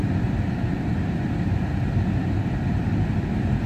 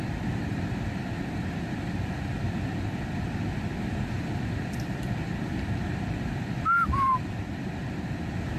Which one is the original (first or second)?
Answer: first